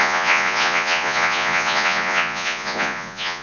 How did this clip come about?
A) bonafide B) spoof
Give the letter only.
B